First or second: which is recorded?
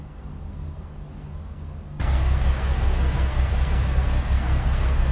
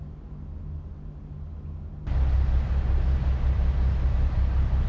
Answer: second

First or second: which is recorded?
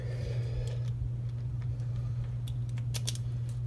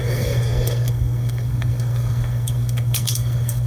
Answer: first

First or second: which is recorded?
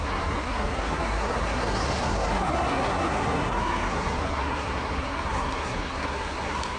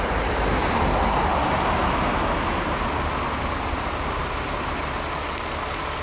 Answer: second